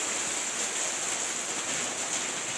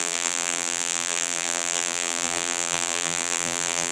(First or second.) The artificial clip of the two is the second